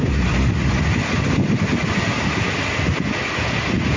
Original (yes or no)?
yes